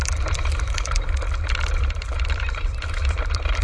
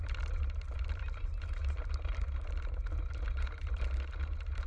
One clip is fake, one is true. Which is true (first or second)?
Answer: second